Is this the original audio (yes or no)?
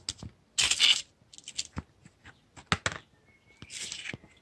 yes